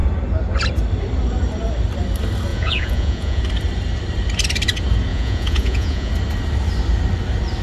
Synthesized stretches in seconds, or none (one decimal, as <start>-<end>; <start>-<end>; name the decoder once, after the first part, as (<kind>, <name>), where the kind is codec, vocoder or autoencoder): 2.5-3.4 (vocoder, Vocos); 5.1-6.1